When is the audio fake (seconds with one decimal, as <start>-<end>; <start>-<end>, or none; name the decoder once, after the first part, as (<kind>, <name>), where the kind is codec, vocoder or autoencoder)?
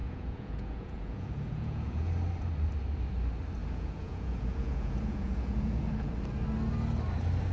0.0-2.1 (vocoder, Vocos); 3.6-6.1